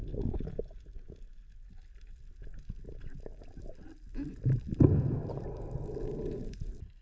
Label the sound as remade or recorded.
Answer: recorded